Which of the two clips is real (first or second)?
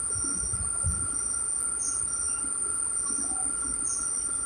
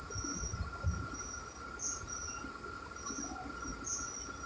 first